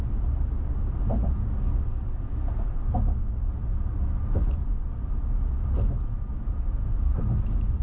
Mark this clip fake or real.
real